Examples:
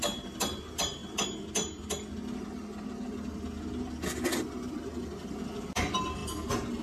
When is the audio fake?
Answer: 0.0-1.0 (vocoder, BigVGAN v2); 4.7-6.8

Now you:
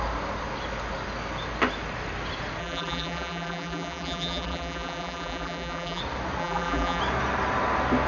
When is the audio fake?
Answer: 2.6-6.0 (vocoder, BigVGAN v2); 6.4-7.0